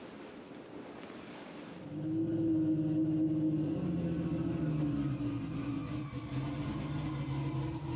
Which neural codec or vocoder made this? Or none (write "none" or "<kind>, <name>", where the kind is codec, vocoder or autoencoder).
none